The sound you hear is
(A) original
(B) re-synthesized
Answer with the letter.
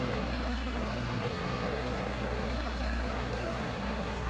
B